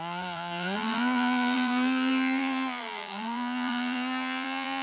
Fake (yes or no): yes